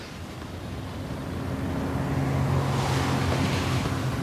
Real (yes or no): yes